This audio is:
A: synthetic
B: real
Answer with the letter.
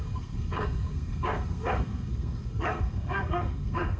A